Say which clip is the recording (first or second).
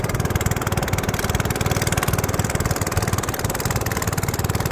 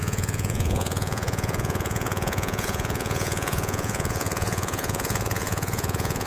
first